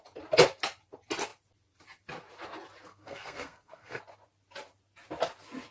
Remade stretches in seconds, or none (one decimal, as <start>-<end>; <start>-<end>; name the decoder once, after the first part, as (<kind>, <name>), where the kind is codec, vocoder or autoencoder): 2.9-4.0 (codec, SNAC)

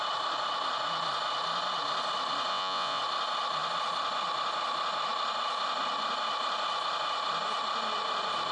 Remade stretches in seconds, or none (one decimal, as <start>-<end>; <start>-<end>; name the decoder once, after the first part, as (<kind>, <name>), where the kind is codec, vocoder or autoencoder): 2.5-3.0 (vocoder, Vocos)

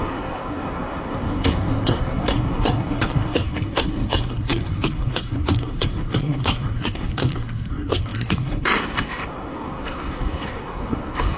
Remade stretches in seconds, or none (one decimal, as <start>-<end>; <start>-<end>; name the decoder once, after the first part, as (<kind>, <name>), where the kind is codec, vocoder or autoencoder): 0.0-11.4 (codec, SNAC)

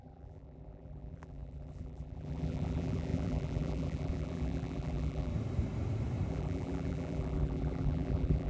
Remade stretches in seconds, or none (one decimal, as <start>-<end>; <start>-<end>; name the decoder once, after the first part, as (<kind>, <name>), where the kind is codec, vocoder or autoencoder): 0.0-5.3 (vocoder, BigVGAN v2); 6.3-8.5

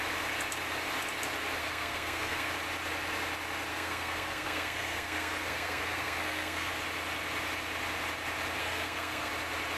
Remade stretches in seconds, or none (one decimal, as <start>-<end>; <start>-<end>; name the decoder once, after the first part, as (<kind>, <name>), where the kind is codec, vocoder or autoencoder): 1.6-2.5 (codec, SNAC); 3.7-6.7; 8.6-9.3

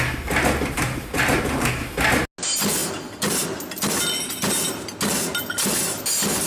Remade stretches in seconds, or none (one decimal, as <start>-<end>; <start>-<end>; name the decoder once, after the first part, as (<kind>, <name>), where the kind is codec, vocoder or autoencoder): none

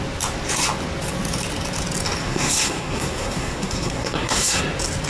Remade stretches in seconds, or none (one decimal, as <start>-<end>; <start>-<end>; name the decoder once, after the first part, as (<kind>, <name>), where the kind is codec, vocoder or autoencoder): 2.2-4.6 (codec, SNAC)

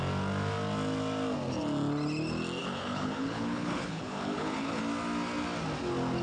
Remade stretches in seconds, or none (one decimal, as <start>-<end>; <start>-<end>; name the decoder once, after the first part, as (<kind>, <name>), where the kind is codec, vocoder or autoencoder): 2.6-4.8 (codec, HILCodec)